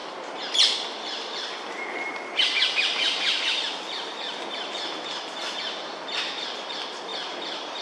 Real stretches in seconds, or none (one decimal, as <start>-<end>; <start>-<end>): 0.0-7.8